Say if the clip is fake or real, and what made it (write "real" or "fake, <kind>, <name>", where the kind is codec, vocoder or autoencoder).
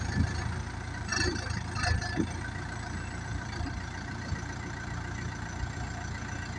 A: fake, vocoder, BigVGAN v2